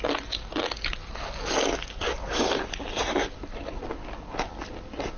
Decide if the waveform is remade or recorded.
recorded